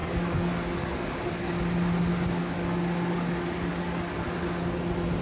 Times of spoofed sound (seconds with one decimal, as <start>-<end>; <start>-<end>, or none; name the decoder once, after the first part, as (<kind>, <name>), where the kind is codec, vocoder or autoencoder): 0.0-1.6 (codec, DAC); 2.1-4.0